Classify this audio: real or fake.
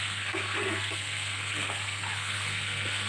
fake